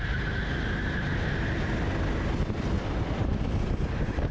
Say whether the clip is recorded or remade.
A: recorded